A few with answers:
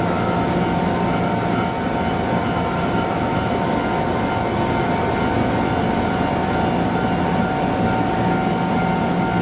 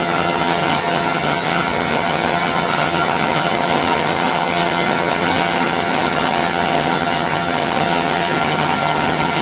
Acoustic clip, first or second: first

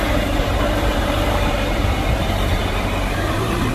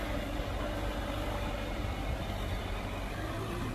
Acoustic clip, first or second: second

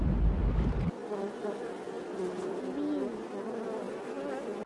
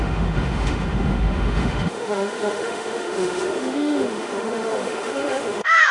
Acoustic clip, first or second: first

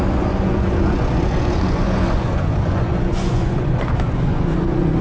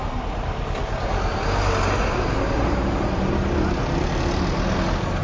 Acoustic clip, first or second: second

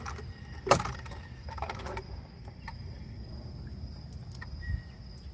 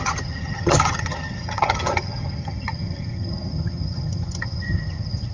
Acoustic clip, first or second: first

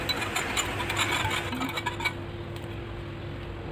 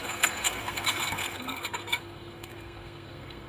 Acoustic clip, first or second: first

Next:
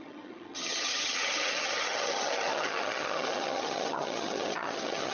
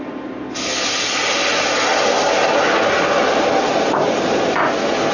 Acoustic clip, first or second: second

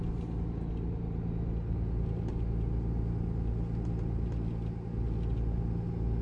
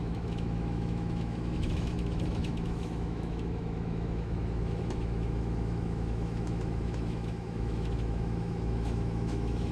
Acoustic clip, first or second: first